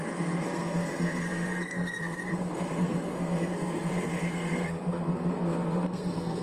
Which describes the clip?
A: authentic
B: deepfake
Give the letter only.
B